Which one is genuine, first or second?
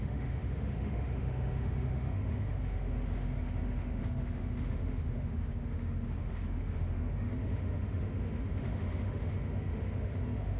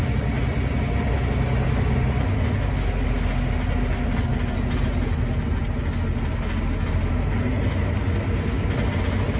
second